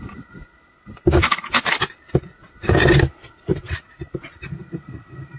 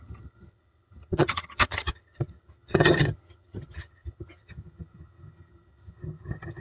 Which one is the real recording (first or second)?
first